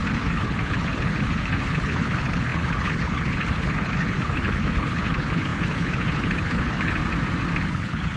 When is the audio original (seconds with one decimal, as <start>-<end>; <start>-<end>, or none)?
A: 7.0-7.6